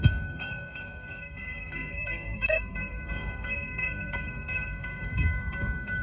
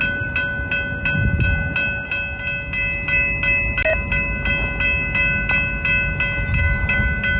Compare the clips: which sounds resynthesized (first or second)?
first